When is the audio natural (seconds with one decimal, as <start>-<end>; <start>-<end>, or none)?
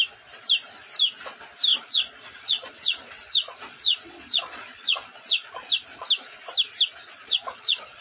0.0-1.7; 6.1-7.0